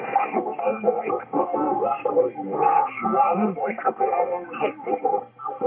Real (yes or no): no